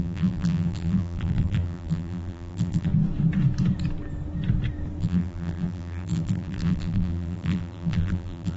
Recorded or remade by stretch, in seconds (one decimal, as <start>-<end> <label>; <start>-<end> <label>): 0.0-2.9 remade; 2.9-5.0 recorded; 5.0-8.6 remade